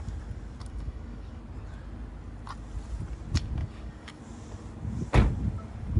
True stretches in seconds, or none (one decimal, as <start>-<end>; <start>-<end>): 0.0-0.6; 1.4-3.6; 4.2-6.0